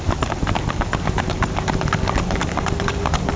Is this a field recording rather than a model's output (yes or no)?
yes